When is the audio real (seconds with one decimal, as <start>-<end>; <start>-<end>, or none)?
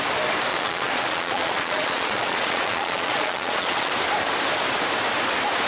0.0-0.5; 3.9-5.7